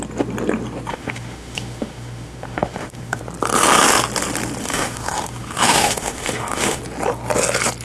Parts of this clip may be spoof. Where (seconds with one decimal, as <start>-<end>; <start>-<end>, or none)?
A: 0.9-3.2; 4.6-6.8